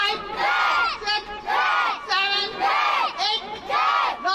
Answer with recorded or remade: recorded